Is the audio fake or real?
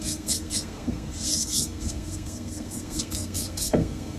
fake